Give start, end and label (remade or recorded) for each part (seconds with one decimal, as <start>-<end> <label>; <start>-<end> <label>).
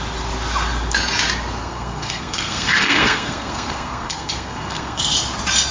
0.0-1.6 recorded; 1.6-5.0 remade; 5.0-5.7 recorded